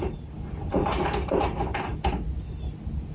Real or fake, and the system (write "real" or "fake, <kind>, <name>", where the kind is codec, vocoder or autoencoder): real